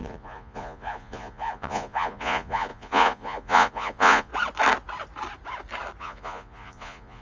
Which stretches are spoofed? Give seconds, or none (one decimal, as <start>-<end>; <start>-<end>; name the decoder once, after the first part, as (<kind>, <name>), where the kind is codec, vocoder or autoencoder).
0.0-4.3 (vocoder, Vocos); 6.0-7.2